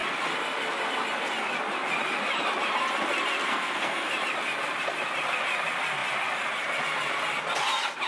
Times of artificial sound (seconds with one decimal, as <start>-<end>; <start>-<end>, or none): 3.4-4.1